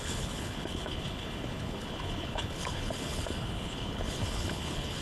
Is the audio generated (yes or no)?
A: yes